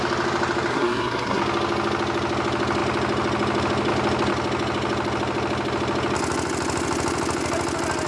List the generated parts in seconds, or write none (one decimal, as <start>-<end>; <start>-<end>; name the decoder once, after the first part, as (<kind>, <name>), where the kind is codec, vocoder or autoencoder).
0.7-1.4 (codec, SNAC)